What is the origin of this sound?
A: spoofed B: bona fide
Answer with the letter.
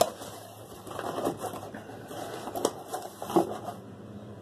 B